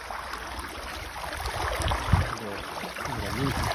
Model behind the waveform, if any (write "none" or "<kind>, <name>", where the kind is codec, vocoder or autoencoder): none